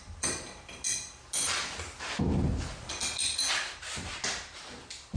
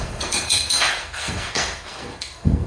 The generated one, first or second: second